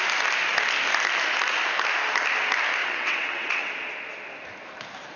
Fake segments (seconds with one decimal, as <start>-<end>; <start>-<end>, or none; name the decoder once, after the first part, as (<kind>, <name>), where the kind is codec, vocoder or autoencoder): 2.8-3.7 (vocoder, WaveNeXt)